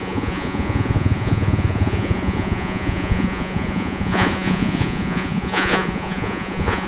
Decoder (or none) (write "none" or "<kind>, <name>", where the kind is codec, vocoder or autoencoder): vocoder, Vocos